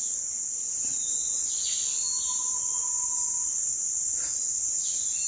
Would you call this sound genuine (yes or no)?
yes